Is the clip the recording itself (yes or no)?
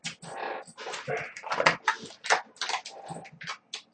yes